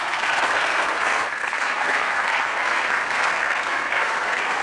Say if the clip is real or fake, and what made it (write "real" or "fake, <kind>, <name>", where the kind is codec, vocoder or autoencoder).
fake, codec, SNAC